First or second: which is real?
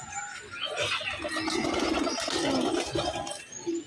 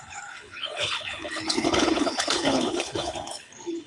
first